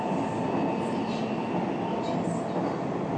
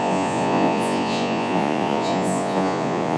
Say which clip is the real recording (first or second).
first